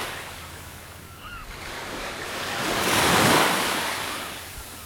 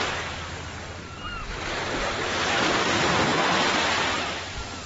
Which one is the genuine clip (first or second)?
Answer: second